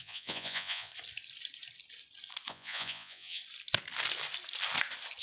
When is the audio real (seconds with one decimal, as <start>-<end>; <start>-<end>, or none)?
0.9-2.5; 3.4-5.2